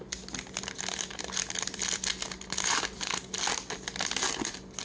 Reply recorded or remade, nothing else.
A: recorded